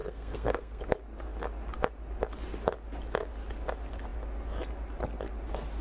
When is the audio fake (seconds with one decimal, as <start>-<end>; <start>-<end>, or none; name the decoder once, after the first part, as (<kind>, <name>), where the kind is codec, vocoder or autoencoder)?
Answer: 0.0-0.8 (codec, SNAC)